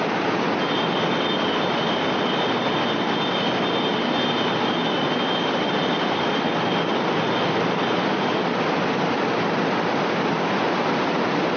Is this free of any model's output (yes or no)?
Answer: yes